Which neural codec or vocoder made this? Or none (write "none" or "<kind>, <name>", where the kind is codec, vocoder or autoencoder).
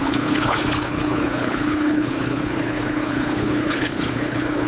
codec, HILCodec